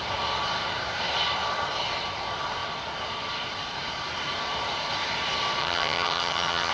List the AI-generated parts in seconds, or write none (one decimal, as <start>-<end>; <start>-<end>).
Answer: 5.6-6.7